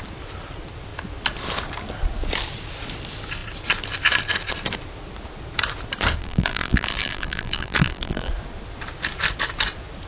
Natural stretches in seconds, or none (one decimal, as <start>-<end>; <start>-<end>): 0.0-6.2; 8.3-10.1